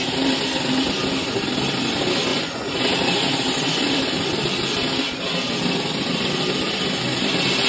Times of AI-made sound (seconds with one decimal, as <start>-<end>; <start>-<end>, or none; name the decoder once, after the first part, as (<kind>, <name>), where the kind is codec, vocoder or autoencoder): 2.3-2.8 (vocoder, Vocos)